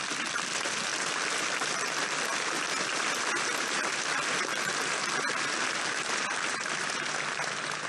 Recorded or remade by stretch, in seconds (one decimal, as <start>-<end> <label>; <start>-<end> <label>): 0.0-7.9 recorded